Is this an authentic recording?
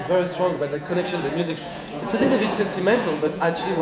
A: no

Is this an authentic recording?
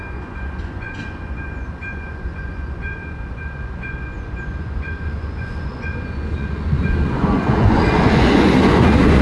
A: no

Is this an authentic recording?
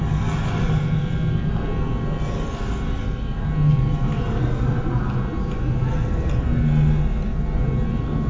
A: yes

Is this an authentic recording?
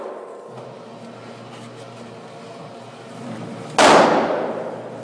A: yes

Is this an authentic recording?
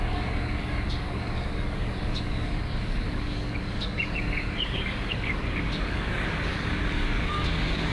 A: no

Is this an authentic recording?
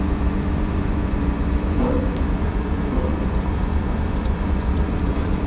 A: no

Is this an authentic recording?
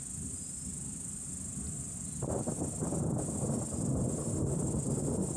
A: yes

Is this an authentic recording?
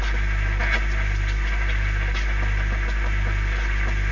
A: yes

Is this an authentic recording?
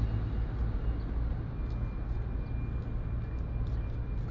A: yes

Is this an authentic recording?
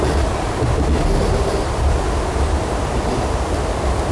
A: yes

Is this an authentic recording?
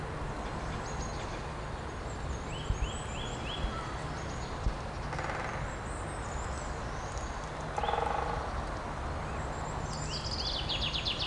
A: yes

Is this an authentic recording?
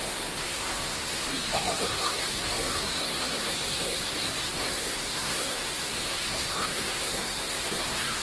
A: no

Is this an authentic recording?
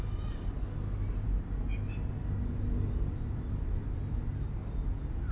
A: yes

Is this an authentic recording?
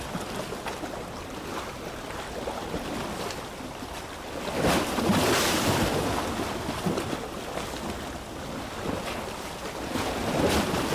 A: yes